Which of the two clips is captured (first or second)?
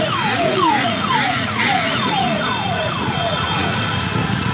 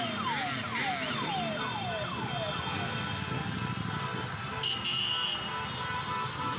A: second